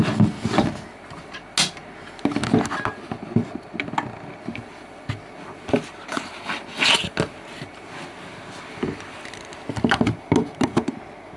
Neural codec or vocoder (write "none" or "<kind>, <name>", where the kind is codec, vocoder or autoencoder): none